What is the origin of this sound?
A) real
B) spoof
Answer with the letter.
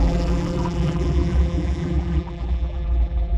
B